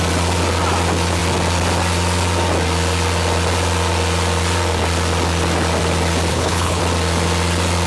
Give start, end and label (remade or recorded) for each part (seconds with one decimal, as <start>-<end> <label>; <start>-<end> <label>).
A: 0.0-6.3 recorded; 6.3-6.8 remade; 6.8-7.9 recorded